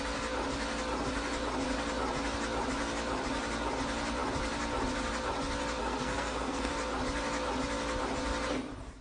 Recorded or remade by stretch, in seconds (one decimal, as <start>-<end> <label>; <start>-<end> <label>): 0.0-5.8 recorded; 5.8-6.7 remade; 6.7-9.0 recorded